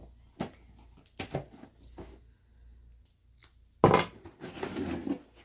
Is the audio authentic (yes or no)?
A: yes